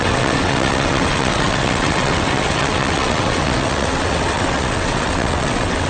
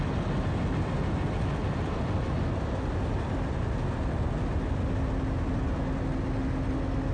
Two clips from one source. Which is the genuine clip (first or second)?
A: second